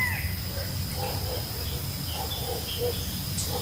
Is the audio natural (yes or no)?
yes